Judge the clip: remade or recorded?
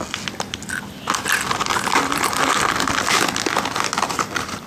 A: recorded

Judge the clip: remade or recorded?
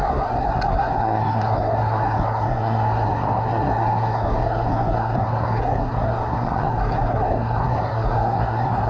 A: remade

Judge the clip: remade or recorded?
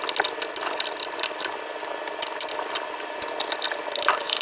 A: recorded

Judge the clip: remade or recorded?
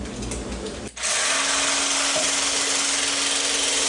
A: recorded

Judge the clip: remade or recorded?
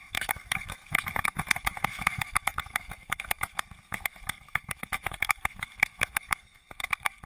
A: remade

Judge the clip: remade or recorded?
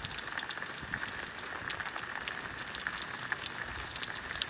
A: recorded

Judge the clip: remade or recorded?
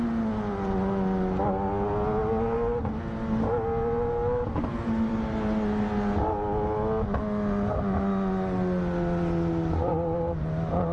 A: recorded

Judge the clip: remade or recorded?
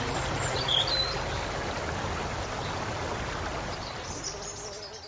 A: recorded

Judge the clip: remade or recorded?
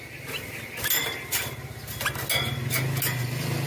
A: recorded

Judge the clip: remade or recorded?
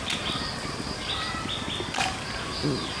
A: recorded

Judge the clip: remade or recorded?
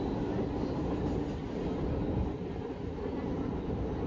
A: recorded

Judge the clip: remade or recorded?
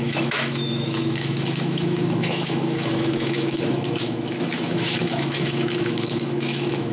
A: remade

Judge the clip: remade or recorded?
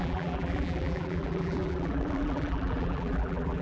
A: remade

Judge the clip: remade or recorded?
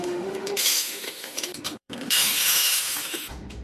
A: remade